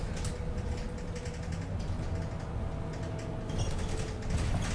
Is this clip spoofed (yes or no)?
no